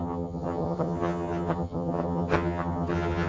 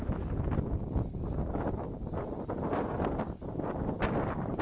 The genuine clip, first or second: second